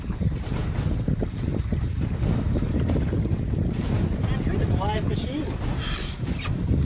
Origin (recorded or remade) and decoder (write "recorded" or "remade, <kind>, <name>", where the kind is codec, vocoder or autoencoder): recorded